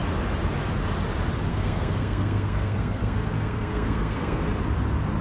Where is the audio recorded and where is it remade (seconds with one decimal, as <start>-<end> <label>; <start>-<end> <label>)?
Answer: 0.0-1.5 recorded; 1.5-4.4 remade; 4.4-5.2 recorded